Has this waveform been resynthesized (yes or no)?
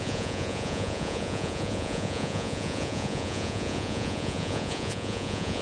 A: yes